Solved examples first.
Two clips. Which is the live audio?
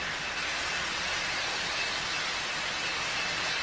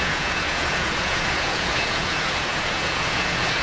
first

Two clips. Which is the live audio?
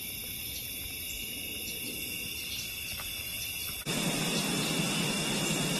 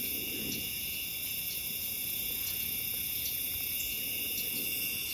first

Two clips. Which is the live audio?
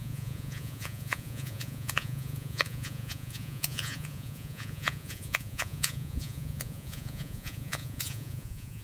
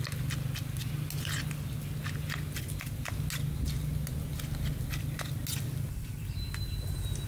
second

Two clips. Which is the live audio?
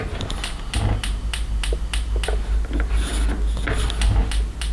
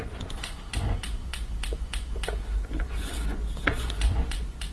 first